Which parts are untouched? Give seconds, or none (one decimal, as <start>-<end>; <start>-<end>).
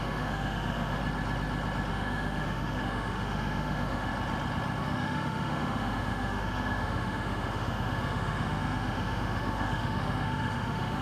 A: 1.0-1.9; 4.1-4.8